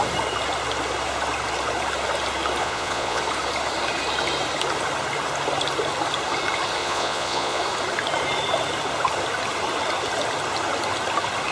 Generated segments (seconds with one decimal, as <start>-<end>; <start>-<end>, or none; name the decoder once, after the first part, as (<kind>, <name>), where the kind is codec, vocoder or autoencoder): 2.6-3.2 (vocoder, Vocos); 6.8-7.6